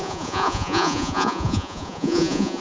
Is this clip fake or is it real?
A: fake